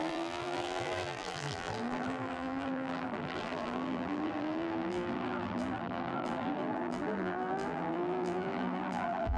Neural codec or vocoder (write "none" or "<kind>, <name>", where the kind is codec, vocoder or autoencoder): vocoder, BigVGAN v2